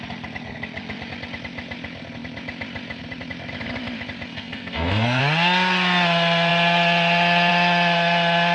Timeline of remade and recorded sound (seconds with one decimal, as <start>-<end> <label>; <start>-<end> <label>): 0.0-4.3 recorded; 4.3-5.2 remade; 5.2-8.5 recorded